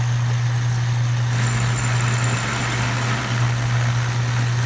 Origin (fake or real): real